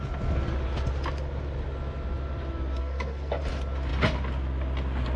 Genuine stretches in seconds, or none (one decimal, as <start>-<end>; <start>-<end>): 0.0-2.8; 3.4-5.2